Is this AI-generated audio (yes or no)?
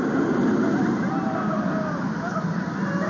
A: no